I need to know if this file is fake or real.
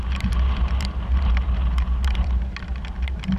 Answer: real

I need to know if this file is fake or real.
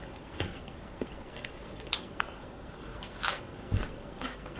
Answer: fake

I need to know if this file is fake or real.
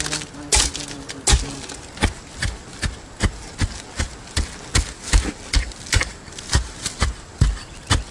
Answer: real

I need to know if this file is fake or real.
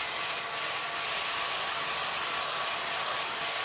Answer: real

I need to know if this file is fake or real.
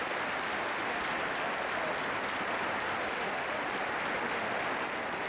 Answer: real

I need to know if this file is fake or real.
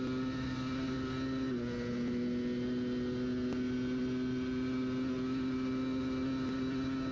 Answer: real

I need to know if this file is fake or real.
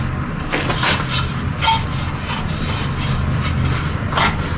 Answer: real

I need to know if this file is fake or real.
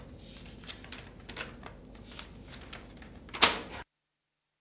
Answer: real